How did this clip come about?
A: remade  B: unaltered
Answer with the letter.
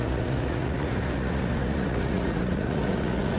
A